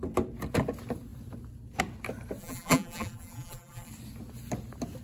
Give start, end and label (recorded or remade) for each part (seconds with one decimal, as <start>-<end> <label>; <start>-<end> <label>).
0.0-2.4 recorded; 2.4-3.9 remade; 3.9-5.0 recorded